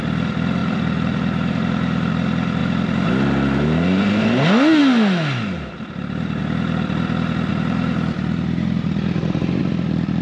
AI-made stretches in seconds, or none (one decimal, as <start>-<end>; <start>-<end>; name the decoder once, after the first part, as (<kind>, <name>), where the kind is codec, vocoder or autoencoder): 0.6-2.1 (vocoder, BigVGAN v2); 2.6-4.1; 7.5-9.6

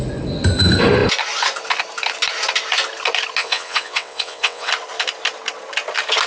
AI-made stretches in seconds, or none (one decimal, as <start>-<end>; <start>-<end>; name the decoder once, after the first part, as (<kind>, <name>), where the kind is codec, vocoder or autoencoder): 3.4-4.7 (vocoder, WaveNeXt)

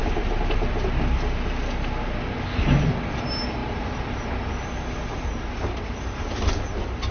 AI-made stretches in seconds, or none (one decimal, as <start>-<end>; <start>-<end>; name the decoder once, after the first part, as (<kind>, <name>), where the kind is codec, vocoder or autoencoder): 0.0-0.7 (vocoder, BigVGAN v2); 3.6-4.3; 5.1-6.0

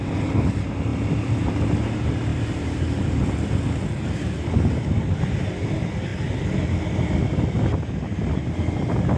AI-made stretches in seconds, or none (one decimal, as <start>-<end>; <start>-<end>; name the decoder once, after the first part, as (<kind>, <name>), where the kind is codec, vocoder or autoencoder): 0.9-1.5 (vocoder, BigVGAN v2); 2.3-2.9